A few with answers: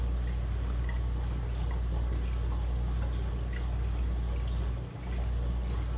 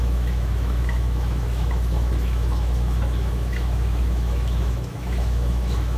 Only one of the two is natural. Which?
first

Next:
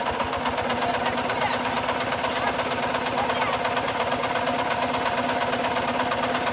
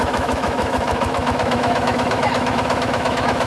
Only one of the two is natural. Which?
first